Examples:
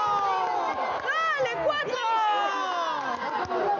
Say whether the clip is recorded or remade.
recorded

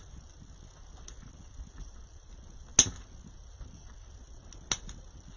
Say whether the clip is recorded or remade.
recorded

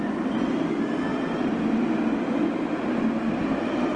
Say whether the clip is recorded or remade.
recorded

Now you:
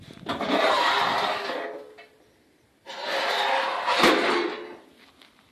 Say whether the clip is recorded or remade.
recorded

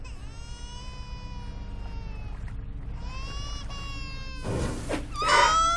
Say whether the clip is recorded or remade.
recorded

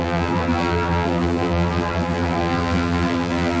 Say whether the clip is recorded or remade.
remade